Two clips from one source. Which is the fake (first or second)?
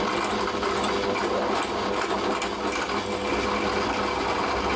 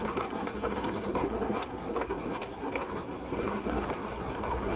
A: second